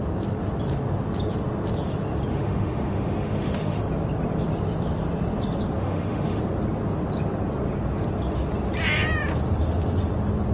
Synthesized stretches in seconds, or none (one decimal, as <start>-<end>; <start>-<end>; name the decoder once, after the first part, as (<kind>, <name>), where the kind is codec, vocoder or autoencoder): 2.3-3.8 (autoencoder, DAC-VAE); 5.8-6.4